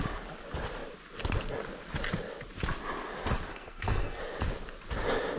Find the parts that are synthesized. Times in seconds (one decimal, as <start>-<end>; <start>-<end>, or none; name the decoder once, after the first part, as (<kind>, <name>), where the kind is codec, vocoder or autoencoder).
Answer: 3.5-4.2 (codec, SNAC)